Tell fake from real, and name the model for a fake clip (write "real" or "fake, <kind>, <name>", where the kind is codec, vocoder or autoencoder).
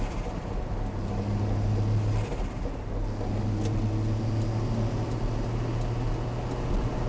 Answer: real